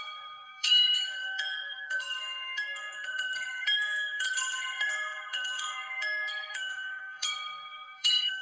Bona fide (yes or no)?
no